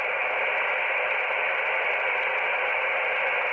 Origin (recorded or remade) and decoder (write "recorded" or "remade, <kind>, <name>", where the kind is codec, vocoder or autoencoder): recorded